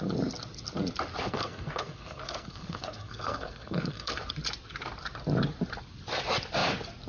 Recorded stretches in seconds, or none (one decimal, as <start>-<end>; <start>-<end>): 0.0-1.2; 4.1-7.1